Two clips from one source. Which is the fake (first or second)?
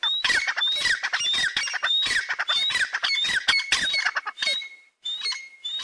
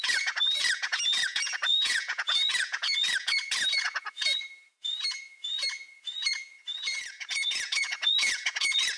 second